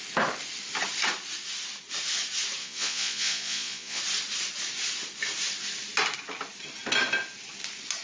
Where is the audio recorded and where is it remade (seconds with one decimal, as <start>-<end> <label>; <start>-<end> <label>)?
0.0-2.6 recorded; 2.6-4.0 remade; 4.0-8.0 recorded